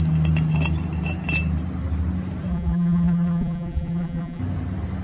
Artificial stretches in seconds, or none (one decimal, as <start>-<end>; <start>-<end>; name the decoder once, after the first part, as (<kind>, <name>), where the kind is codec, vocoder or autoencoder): 2.5-4.4 (vocoder, BigVGAN v2)